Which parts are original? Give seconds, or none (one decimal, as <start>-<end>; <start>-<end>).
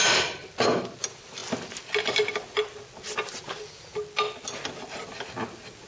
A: 0.0-5.9